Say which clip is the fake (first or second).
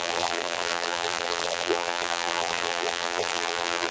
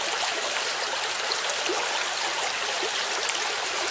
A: first